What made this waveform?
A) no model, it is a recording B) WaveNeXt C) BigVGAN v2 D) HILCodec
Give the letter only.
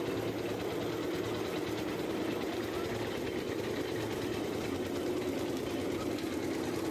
A